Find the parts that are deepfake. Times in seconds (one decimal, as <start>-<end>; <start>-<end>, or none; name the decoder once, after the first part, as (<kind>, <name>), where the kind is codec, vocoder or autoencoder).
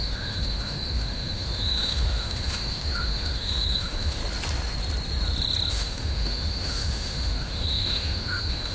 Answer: 0.0-4.2 (autoencoder, DAC-VAE); 5.7-8.7